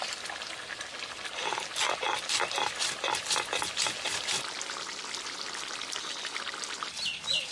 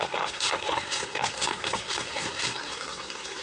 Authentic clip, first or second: first